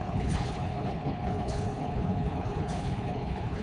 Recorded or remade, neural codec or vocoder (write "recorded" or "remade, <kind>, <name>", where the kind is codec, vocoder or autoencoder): remade, codec, HILCodec